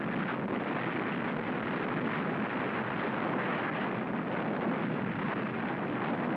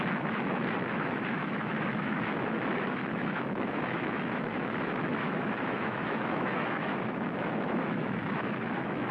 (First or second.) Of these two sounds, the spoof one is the second